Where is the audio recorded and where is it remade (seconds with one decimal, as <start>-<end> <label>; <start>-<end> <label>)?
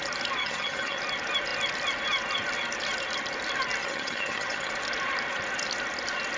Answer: 0.0-0.4 recorded; 0.4-1.0 remade; 1.0-3.8 recorded; 3.8-4.7 remade; 4.7-6.4 recorded